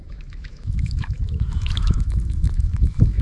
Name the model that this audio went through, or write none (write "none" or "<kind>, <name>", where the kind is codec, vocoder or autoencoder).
autoencoder, DAC-VAE